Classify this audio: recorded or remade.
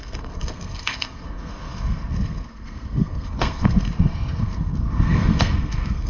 remade